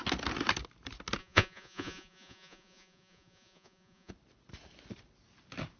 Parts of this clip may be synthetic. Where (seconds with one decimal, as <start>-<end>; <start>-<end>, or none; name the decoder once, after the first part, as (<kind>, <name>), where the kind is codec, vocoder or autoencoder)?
1.2-4.1 (vocoder, Vocos)